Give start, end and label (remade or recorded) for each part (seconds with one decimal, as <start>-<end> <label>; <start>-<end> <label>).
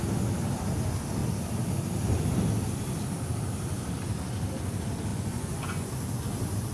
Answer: 0.0-5.1 recorded; 5.1-5.9 remade; 5.9-6.7 recorded